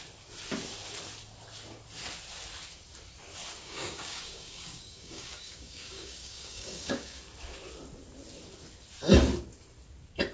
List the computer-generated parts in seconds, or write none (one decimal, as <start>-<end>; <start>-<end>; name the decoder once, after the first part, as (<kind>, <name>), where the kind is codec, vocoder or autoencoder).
3.6-7.2 (codec, DAC)